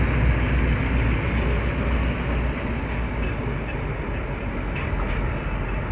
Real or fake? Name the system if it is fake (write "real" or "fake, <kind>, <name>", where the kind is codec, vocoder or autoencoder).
real